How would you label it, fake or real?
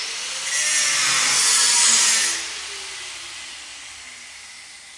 real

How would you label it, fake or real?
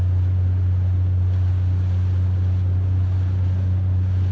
real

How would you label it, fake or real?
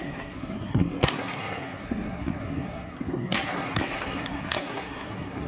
fake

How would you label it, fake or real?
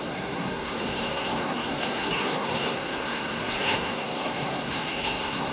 fake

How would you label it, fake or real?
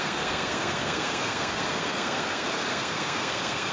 fake